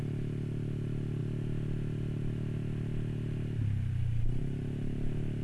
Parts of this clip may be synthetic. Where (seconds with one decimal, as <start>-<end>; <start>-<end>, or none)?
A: none